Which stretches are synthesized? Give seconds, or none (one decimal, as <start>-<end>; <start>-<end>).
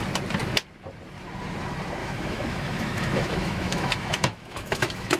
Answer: 2.0-5.2